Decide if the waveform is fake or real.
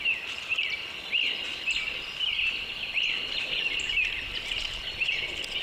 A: real